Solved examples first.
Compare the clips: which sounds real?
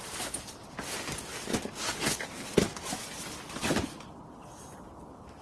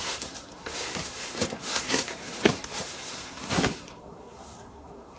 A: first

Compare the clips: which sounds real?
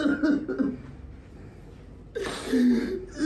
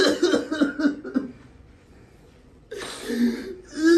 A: first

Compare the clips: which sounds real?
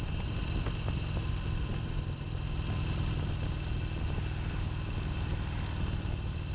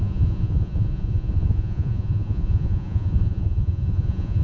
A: first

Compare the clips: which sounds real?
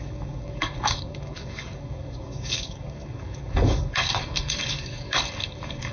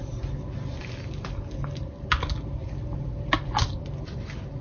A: second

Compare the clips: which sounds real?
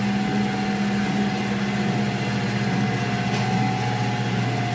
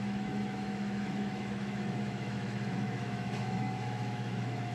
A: first